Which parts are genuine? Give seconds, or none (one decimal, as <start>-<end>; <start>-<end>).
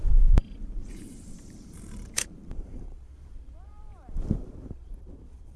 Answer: none